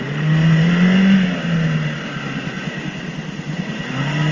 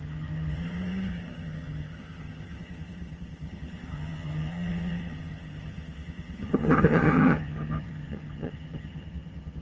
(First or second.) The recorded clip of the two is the first